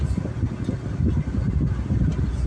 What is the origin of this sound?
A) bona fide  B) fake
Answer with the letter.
A